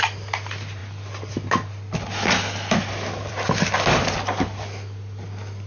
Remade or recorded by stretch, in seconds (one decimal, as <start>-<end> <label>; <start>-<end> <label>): 0.0-5.7 recorded